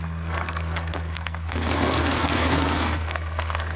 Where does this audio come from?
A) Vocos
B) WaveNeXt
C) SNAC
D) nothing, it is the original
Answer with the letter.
C